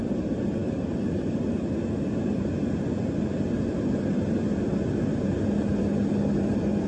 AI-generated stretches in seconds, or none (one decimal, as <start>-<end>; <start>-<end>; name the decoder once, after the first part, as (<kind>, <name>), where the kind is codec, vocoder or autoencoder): none